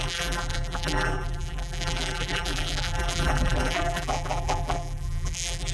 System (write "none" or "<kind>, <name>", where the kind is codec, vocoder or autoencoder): vocoder, BigVGAN v2